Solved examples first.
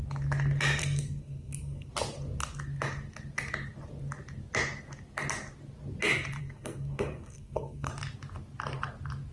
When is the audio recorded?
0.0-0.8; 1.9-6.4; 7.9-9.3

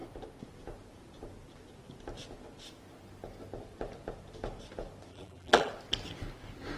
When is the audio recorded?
0.0-5.1; 5.7-6.8